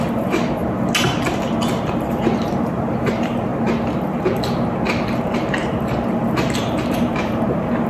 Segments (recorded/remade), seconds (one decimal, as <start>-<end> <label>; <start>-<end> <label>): 0.0-0.6 remade; 0.6-2.1 recorded; 2.1-3.5 remade; 3.5-5.2 recorded; 5.2-7.9 remade